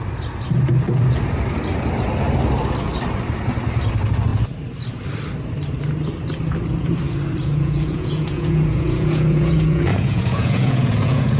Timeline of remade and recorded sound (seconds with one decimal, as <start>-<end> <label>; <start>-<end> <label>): 0.0-7.4 recorded; 7.4-11.4 remade